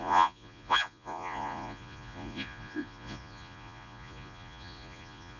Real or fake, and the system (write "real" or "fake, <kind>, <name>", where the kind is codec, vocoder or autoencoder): fake, vocoder, Vocos